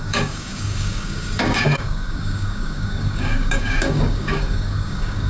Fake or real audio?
fake